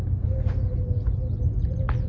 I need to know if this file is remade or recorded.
recorded